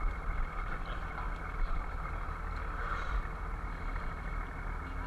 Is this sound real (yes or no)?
yes